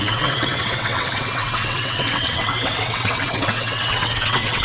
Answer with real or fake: fake